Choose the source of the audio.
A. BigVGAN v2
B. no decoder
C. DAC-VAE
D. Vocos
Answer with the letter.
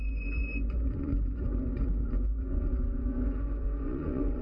D